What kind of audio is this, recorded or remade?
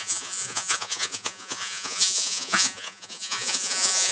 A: remade